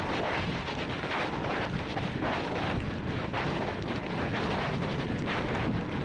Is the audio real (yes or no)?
yes